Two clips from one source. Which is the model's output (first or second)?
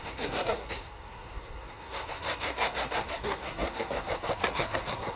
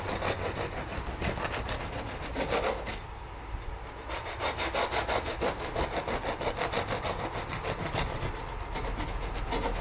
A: first